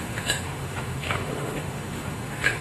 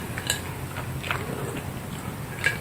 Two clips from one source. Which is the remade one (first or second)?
first